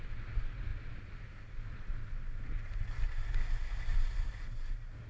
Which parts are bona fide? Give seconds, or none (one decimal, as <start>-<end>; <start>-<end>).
0.0-5.1